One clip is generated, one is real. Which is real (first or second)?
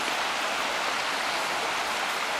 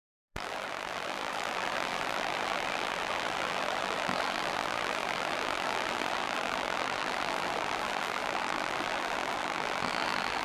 first